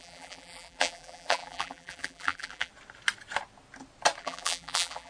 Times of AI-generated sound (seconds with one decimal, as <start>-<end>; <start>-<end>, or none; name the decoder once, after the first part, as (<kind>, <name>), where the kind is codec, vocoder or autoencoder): 0.0-2.7 (vocoder, BigVGAN v2); 4.2-5.1